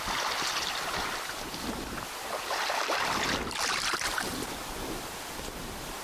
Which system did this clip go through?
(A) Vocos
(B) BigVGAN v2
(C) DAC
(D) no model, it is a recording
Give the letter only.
D